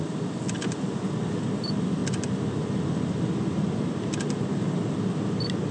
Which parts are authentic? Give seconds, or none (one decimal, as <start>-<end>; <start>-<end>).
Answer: 0.0-5.7